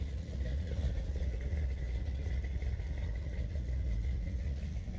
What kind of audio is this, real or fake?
fake